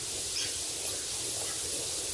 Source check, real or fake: real